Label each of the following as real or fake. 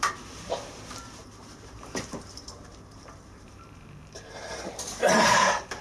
fake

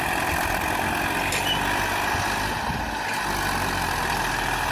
real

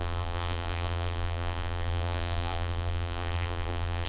fake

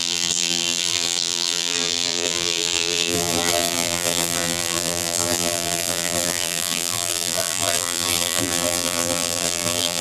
fake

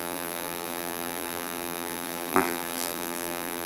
fake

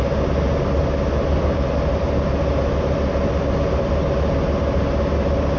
real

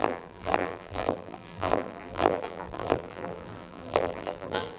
fake